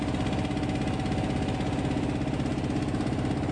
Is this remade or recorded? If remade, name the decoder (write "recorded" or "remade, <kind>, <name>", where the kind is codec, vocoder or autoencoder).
recorded